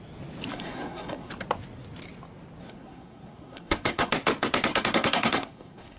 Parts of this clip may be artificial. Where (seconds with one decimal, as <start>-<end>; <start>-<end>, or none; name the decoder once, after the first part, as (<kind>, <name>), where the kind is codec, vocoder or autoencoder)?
0.5-1.3 (codec, SNAC); 2.6-4.1; 4.7-6.0